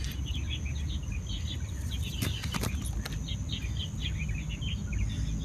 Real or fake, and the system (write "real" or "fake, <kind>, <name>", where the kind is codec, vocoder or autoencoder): real